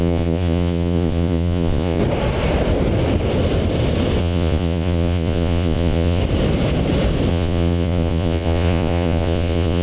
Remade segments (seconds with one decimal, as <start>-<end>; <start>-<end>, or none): 0.0-2.0; 4.2-6.2; 7.3-9.8